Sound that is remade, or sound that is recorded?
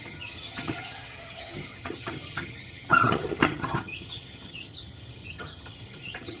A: remade